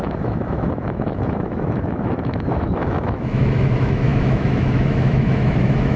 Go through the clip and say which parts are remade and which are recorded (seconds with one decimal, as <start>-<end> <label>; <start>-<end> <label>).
0.0-6.0 remade